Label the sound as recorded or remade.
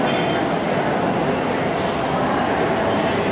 recorded